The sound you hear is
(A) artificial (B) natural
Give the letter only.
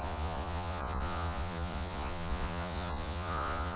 A